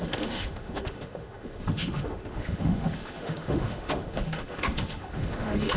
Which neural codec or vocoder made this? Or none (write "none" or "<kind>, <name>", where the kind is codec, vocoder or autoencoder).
autoencoder, DAC-VAE